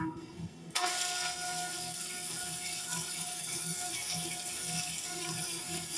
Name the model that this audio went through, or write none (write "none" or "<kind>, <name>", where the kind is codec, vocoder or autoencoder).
codec, SNAC